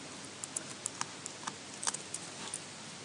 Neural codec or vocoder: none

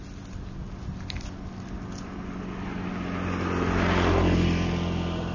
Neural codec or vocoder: none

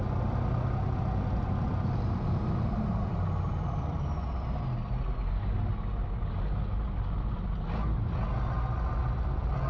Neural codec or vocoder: none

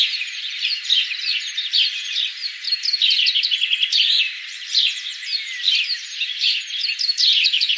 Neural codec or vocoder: vocoder, BigVGAN v2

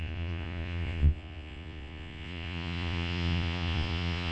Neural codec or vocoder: vocoder, Vocos